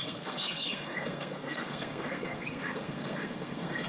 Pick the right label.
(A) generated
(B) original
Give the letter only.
A